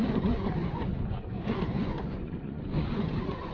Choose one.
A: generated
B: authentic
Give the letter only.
A